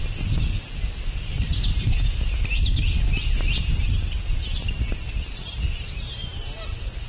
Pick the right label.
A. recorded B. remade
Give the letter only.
A